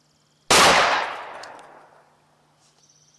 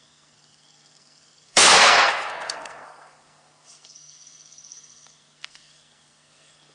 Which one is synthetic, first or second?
second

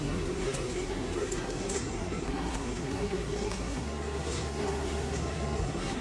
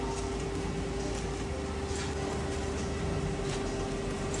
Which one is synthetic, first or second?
first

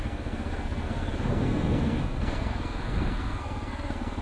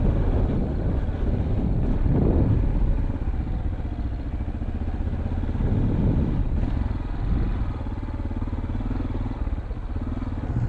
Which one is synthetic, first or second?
first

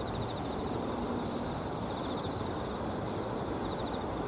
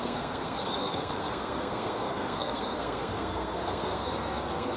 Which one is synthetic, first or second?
second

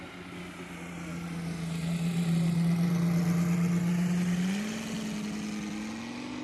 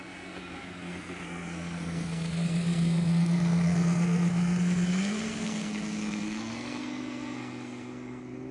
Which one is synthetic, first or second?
second